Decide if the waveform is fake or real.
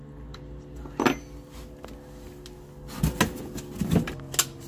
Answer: real